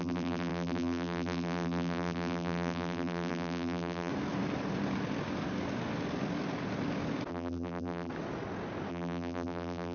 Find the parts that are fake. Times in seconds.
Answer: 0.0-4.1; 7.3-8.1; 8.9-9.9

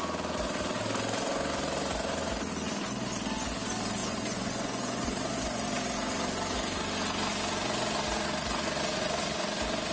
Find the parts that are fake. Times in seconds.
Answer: 4.0-5.7

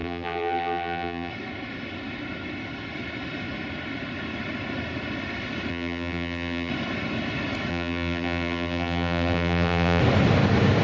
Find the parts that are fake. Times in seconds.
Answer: 0.0-1.3; 5.7-6.7; 7.7-10.0

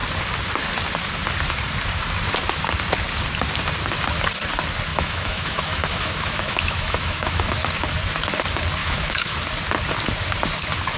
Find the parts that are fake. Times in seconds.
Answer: 4.9-7.5; 8.8-9.4

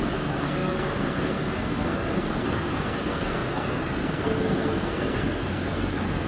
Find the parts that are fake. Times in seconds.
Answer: 0.0-6.3

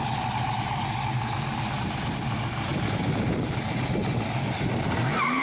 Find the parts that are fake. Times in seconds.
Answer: 0.0-2.7; 3.4-4.0; 4.7-5.4

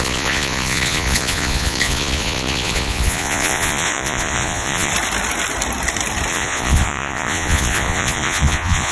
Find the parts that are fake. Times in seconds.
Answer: 0.0-4.9; 6.3-8.9

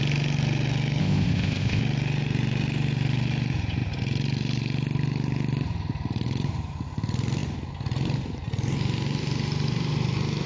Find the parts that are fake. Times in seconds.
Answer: 1.0-1.8